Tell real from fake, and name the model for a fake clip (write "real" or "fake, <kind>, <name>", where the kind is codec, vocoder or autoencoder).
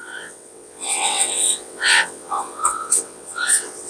fake, vocoder, WaveNeXt